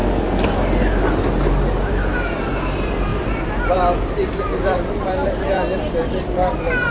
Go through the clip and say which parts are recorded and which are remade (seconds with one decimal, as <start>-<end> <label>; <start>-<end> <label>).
0.0-1.5 recorded; 1.5-6.9 remade